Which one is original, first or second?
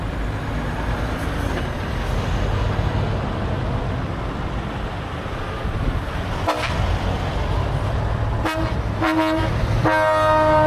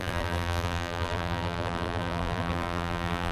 first